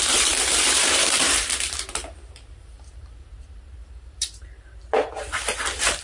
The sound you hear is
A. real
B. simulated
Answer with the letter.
B